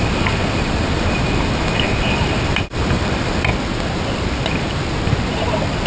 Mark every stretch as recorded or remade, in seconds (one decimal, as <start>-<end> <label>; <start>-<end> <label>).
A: 0.0-3.5 remade; 3.5-5.9 recorded

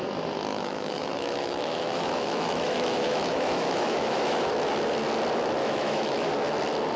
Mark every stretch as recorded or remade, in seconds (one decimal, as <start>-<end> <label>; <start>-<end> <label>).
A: 0.0-0.5 recorded; 0.5-4.5 remade; 4.5-5.6 recorded; 5.6-6.3 remade; 6.3-7.0 recorded

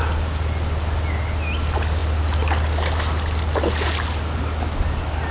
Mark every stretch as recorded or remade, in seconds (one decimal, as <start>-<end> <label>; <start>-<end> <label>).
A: 0.0-5.3 recorded

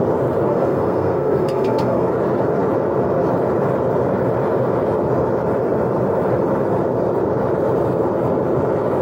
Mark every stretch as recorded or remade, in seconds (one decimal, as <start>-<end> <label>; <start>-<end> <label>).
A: 0.0-0.5 recorded; 0.5-2.1 remade; 2.1-9.0 recorded

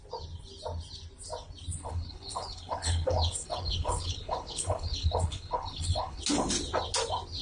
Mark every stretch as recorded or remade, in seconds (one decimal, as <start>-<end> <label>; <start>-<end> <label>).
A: 0.0-1.8 recorded; 1.8-6.2 remade; 6.2-7.4 recorded

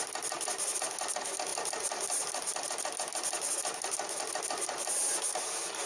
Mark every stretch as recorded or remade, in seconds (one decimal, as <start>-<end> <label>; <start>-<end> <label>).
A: 0.0-5.9 recorded

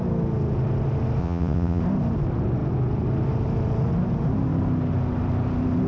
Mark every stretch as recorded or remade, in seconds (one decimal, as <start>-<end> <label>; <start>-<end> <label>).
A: 0.0-1.2 recorded; 1.2-1.8 remade; 1.8-5.9 recorded

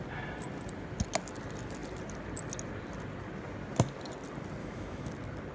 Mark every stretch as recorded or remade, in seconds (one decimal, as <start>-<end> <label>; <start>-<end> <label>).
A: 0.0-4.6 recorded; 4.6-5.1 remade; 5.1-5.5 recorded